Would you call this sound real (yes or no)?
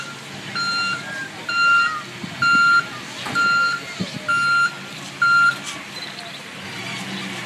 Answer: yes